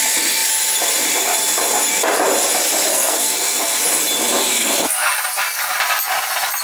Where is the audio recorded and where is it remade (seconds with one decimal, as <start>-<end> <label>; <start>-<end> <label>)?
0.0-2.9 recorded; 2.9-3.8 remade; 3.8-4.5 recorded; 4.5-5.1 remade; 5.1-6.6 recorded